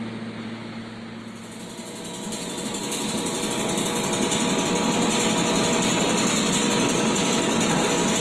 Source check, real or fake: real